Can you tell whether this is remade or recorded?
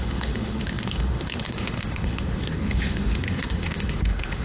remade